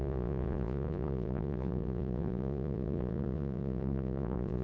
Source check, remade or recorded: remade